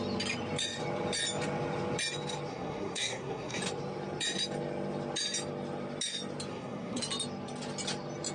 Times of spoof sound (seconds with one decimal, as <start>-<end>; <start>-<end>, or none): 2.5-3.6; 6.5-7.0